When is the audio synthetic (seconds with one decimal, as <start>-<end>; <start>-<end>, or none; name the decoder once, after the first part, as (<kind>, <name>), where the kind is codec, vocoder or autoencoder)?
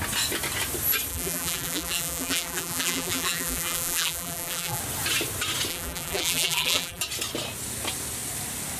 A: 1.1-4.8 (vocoder, BigVGAN v2); 5.7-7.0